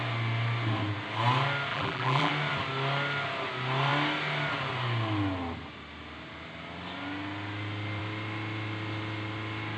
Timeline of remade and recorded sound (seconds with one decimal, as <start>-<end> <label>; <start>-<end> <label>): 0.0-1.7 recorded; 1.7-2.3 remade; 2.3-9.8 recorded